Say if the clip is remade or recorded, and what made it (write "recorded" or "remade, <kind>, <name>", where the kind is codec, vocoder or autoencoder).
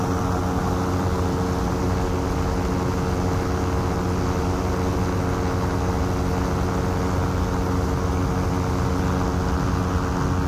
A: recorded